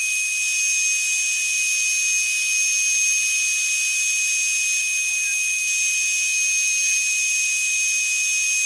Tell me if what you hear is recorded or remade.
recorded